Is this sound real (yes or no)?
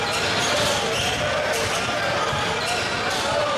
yes